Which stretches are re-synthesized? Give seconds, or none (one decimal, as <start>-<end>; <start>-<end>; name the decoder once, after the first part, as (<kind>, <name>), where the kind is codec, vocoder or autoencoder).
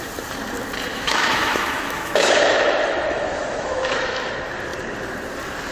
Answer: 0.9-4.3 (autoencoder, DAC-VAE)